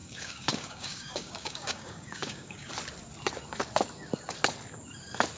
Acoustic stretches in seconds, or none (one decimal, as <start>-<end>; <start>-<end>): 2.7-5.4